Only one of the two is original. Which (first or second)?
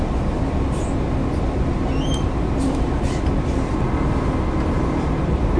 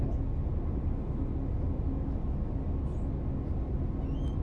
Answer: second